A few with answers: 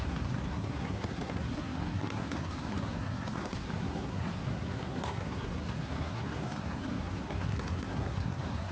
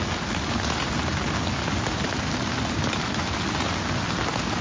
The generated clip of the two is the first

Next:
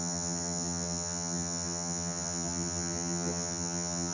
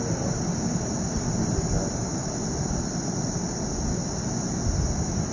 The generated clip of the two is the first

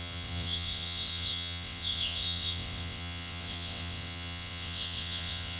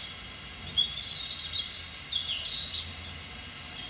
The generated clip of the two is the first